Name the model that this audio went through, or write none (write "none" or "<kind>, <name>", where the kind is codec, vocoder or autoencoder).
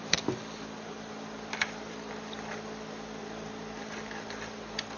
none